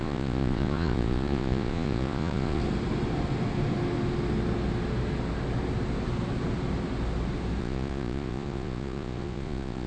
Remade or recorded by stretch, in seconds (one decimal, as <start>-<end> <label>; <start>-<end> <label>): 0.0-2.6 remade; 2.6-7.6 recorded; 7.6-9.9 remade